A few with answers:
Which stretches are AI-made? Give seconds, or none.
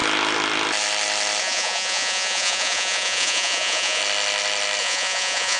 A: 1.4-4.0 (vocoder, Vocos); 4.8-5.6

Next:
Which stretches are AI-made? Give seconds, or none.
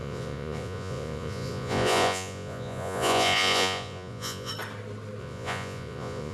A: 0.0-4.5 (vocoder, Vocos); 5.2-6.3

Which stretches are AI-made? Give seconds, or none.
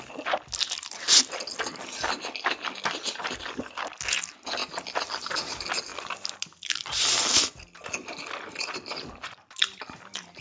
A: none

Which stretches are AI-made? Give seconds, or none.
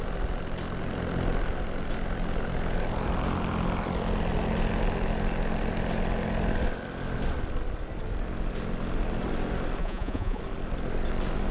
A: 9.8-10.4 (vocoder, Vocos)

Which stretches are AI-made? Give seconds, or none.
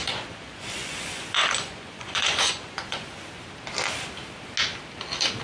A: 0.0-3.2 (vocoder, Vocos)